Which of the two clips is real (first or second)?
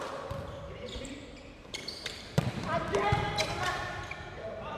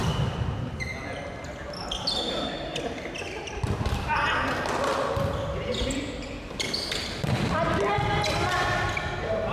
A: second